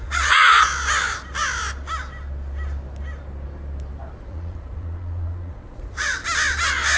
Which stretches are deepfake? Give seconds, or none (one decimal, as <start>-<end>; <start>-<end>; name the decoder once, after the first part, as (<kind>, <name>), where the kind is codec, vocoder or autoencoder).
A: 0.0-0.7 (vocoder, Vocos); 4.2-6.2